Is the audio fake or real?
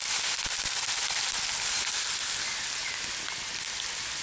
real